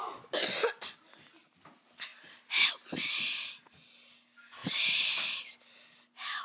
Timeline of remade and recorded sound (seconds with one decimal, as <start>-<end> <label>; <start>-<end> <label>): 0.0-4.6 recorded; 4.6-5.1 remade; 5.1-6.4 recorded